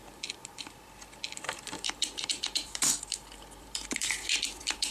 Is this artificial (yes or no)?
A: yes